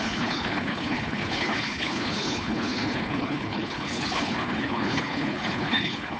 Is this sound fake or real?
fake